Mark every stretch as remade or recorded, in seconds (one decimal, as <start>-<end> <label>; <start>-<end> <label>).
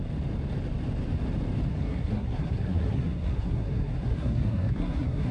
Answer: 0.0-1.7 recorded; 1.7-5.3 remade